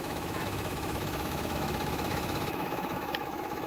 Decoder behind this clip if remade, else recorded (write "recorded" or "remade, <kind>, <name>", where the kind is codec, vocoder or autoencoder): remade, autoencoder, DAC-VAE